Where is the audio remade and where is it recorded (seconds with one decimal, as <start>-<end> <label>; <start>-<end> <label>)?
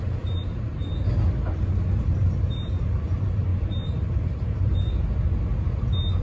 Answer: 0.0-0.8 remade; 0.8-2.0 recorded; 2.0-3.5 remade; 3.5-4.0 recorded; 4.0-4.7 remade; 4.7-6.2 recorded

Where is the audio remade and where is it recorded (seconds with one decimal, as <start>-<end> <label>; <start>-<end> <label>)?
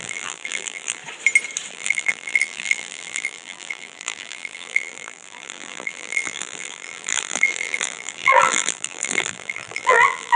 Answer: 0.0-1.0 remade; 1.0-1.7 recorded; 1.7-10.4 remade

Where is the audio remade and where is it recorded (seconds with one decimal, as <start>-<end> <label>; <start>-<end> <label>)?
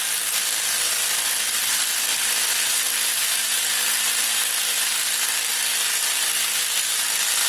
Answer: 0.0-7.5 recorded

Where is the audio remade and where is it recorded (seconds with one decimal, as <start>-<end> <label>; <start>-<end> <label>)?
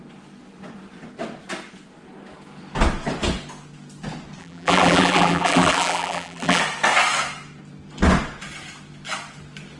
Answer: 0.0-4.4 recorded; 4.4-6.6 remade; 6.6-9.8 recorded